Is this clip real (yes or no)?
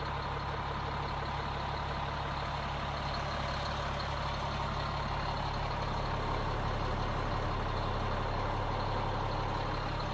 yes